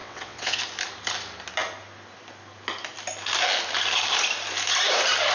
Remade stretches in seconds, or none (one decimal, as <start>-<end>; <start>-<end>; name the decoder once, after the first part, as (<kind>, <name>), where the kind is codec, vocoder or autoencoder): 0.0-0.6 (vocoder, WaveNeXt)